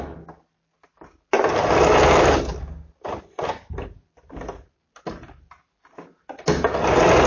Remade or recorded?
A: recorded